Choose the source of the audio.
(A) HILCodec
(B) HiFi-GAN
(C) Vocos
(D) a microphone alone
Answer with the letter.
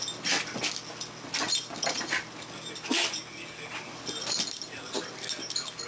D